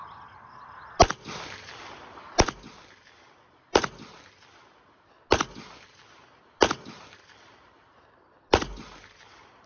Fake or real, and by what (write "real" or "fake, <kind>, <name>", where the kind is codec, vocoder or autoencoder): real